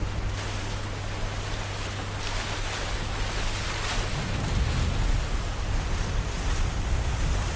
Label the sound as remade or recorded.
recorded